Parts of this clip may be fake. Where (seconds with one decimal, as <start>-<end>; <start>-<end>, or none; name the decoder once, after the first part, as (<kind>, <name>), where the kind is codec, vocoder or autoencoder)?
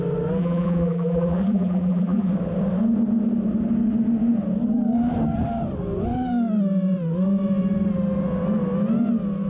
0.4-2.3 (vocoder, BigVGAN v2)